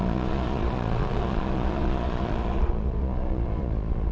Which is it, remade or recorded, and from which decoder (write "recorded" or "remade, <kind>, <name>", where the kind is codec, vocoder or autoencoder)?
remade, vocoder, Vocos